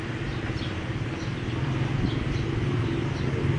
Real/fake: real